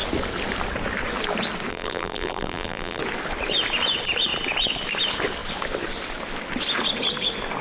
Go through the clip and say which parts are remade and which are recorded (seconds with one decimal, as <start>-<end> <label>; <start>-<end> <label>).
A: 0.0-1.7 recorded; 1.7-3.0 remade; 3.0-7.6 recorded